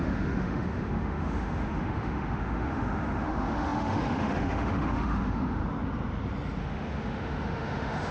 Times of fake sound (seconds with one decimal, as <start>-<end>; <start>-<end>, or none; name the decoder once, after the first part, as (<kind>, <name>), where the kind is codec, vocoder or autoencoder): 0.0-5.6 (autoencoder, DAC-VAE); 6.6-8.1